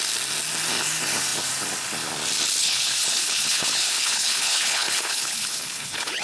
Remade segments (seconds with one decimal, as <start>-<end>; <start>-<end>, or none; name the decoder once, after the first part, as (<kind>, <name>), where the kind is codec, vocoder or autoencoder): 2.6-6.2 (codec, HILCodec)